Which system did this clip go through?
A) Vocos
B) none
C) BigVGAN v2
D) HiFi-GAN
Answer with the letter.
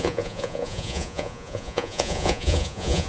A